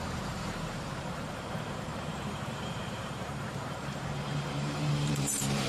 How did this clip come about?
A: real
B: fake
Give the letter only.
B